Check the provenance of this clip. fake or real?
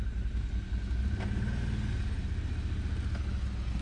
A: real